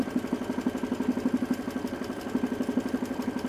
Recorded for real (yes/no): yes